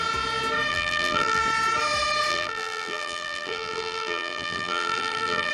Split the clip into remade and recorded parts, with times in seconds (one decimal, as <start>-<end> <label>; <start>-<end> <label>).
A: 0.0-0.7 recorded; 0.7-1.4 remade; 1.4-2.3 recorded; 2.3-5.5 remade

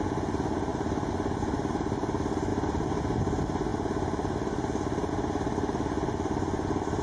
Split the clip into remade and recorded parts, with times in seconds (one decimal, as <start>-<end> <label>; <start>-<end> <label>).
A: 0.0-0.7 recorded; 0.7-1.7 remade; 1.7-2.5 recorded; 2.5-3.0 remade; 3.0-7.0 recorded

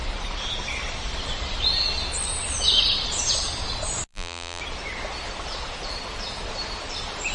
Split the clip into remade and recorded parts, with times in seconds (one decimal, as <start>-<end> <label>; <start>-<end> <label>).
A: 0.0-4.1 recorded; 4.1-4.6 remade; 4.6-7.3 recorded

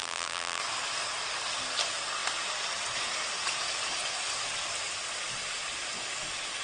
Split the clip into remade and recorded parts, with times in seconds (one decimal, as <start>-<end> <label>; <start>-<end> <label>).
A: 0.0-0.6 remade; 0.6-6.6 recorded

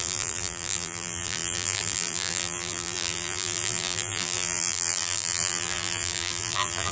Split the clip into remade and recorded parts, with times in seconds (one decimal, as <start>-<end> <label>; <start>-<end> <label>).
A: 0.0-6.9 remade

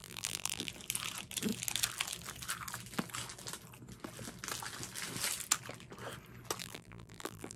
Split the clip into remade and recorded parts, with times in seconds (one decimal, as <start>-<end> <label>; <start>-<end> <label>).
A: 0.0-0.7 remade; 0.7-6.6 recorded; 6.6-7.6 remade